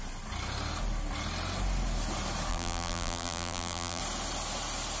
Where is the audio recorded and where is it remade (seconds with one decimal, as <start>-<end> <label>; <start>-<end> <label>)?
0.0-2.5 recorded; 2.5-4.0 remade; 4.0-5.0 recorded